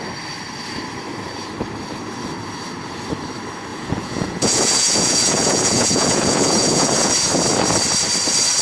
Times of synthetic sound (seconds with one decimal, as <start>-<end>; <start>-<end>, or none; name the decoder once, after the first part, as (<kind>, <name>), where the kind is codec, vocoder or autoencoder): 3.7-7.1 (vocoder, Vocos)